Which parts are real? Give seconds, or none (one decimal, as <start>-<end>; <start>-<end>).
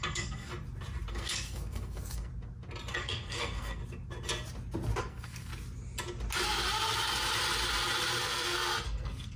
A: 0.5-1.1; 2.3-2.9; 3.8-5.0; 5.5-8.2